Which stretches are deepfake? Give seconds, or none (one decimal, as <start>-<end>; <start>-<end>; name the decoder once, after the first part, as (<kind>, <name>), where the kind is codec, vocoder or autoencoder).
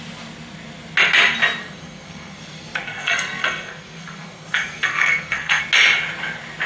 1.6-5.6 (codec, SNAC)